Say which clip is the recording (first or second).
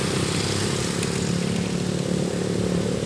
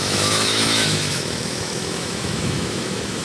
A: first